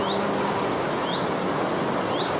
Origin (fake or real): real